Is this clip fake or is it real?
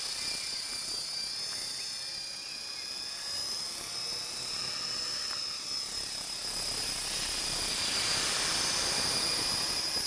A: real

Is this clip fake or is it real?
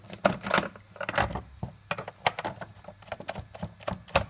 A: real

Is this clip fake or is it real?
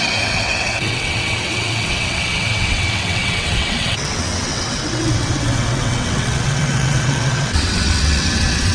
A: fake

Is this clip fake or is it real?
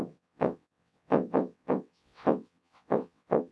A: fake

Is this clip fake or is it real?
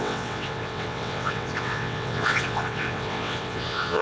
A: fake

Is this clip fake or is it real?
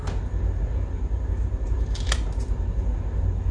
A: real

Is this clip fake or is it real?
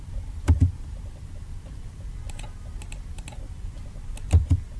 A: real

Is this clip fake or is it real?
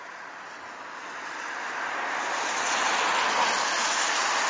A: real